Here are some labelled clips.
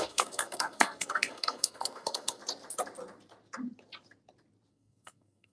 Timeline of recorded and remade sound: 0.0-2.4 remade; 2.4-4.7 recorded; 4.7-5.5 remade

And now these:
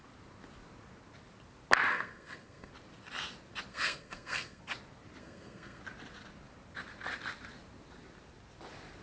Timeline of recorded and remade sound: 0.0-1.9 recorded; 1.9-2.7 remade; 2.7-3.7 recorded; 3.7-4.6 remade; 4.6-5.2 recorded; 5.2-5.8 remade; 5.8-9.0 recorded

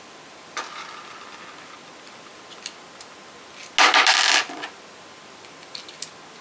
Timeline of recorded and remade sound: 0.0-6.4 recorded

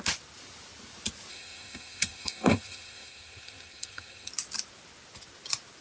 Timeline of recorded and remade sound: 0.0-1.3 recorded; 1.3-4.3 remade; 4.3-5.8 recorded

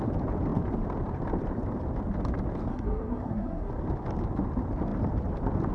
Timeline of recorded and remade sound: 0.0-2.7 recorded; 2.7-3.7 remade; 3.7-5.7 recorded

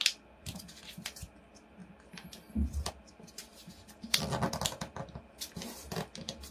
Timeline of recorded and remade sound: 0.0-6.5 recorded

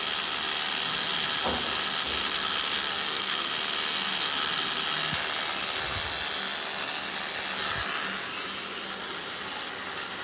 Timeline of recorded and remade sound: 0.0-2.9 recorded; 2.9-3.5 remade; 3.5-10.2 recorded